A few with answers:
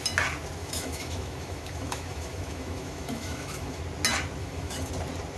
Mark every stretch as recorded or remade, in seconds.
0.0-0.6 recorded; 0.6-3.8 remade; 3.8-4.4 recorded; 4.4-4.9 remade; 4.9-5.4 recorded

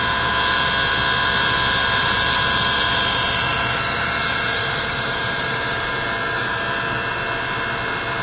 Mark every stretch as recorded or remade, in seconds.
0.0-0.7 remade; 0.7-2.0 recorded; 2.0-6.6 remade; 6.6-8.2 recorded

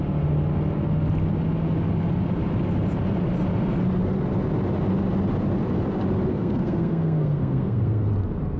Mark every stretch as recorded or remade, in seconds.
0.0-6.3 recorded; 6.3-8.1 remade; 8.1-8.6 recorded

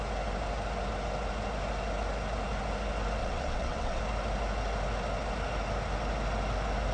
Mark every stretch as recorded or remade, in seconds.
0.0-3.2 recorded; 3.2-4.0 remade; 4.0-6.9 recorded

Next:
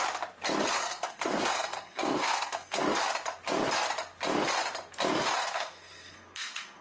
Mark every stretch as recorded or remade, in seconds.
0.0-0.8 recorded; 0.8-2.8 remade; 2.8-5.4 recorded; 5.4-6.8 remade